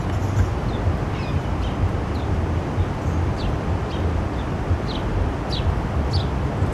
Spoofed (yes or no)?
no